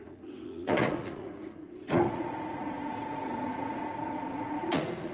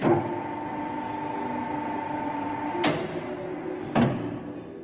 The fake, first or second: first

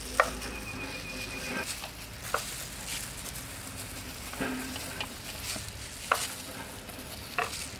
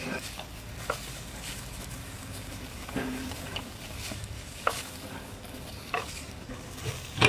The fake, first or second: second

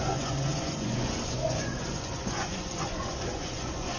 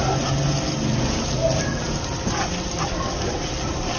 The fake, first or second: first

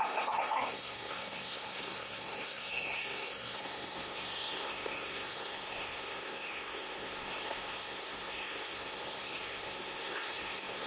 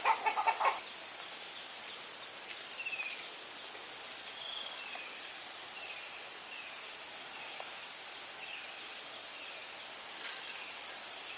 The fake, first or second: first